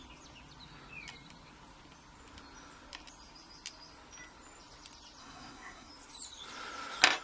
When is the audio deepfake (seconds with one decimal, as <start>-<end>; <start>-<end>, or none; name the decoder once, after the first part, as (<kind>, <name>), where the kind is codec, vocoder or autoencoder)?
5.2-5.9 (codec, SNAC)